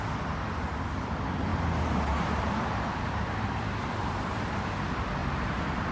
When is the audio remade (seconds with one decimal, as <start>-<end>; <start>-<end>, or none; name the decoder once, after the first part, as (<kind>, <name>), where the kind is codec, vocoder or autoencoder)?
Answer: 1.5-4.5 (vocoder, BigVGAN v2); 5.2-5.9